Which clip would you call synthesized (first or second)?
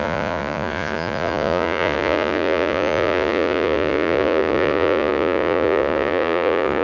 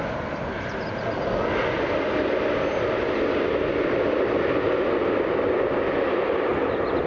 first